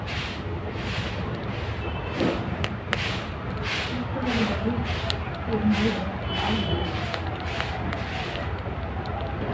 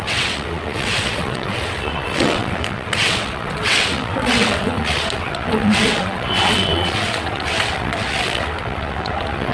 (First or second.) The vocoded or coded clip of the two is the second